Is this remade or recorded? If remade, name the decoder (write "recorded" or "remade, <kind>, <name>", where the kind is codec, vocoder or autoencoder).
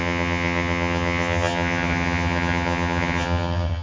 remade, vocoder, HiFi-GAN